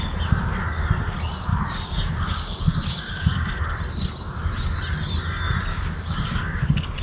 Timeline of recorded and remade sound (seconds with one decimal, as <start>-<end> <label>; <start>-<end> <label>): 0.0-1.5 recorded; 1.5-3.5 remade; 3.5-5.7 recorded; 5.7-6.6 remade; 6.6-7.0 recorded